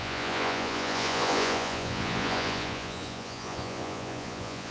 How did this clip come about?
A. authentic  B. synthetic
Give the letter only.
B